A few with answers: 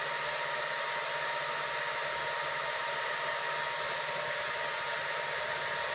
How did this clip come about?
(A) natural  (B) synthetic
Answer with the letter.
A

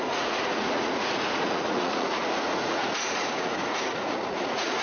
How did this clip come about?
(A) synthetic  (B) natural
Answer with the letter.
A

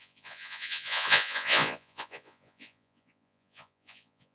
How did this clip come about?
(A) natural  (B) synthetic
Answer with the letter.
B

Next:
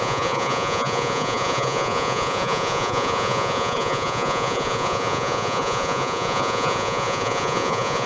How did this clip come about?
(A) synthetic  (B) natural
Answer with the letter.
A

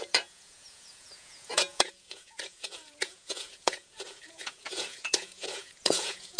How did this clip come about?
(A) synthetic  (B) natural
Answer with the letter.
A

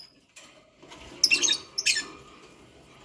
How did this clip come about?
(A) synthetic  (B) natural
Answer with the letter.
B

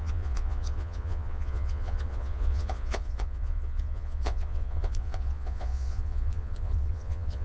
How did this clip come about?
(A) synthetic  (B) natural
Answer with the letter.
A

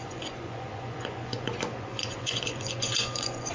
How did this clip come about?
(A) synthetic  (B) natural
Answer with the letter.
A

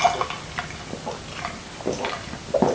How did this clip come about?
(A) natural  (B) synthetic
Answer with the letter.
A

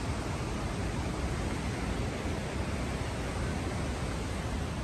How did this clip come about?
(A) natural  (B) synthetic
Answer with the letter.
A